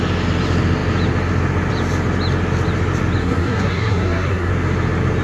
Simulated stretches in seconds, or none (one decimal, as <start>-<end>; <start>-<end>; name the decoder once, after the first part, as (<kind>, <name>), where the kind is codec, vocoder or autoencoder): 3.2-4.5 (codec, SNAC)